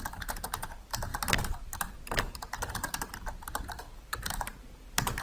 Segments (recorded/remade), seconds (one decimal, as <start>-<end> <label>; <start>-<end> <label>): 0.0-5.2 remade